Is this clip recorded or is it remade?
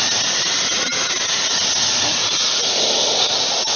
recorded